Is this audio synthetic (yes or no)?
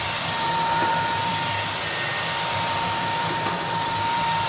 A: yes